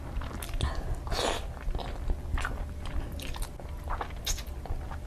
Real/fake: real